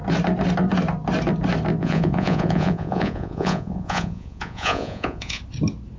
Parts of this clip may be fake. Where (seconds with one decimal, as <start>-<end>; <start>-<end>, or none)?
1.8-5.4